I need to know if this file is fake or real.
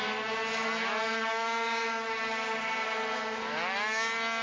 real